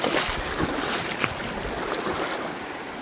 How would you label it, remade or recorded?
recorded